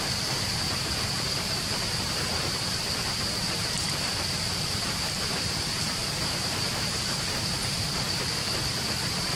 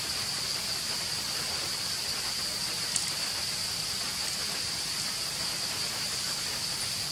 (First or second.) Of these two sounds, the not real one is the first